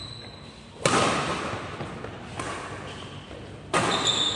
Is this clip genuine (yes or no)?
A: yes